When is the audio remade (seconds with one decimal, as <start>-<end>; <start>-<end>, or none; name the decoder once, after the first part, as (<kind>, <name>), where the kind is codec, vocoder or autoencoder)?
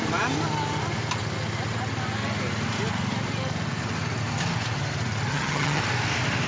5.3-5.8 (vocoder, HiFi-GAN)